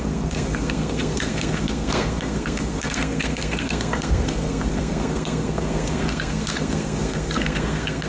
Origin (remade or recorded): remade